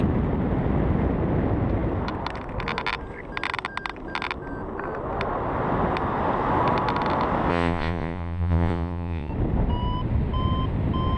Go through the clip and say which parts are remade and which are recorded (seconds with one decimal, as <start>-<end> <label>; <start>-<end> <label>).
0.0-7.5 recorded; 7.5-9.3 remade; 9.3-11.2 recorded